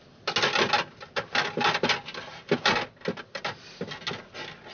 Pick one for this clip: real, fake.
real